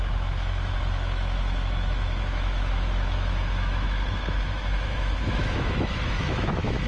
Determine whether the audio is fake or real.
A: fake